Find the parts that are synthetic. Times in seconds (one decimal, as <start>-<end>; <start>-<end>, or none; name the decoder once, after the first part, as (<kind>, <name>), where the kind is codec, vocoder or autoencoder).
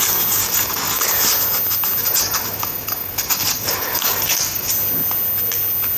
0.4-1.1 (codec, DAC); 2.0-4.7